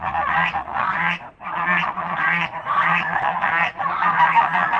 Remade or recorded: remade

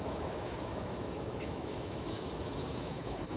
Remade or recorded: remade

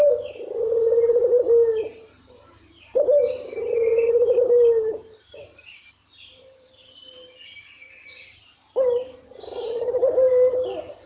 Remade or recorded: remade